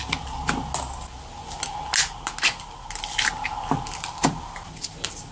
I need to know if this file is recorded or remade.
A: recorded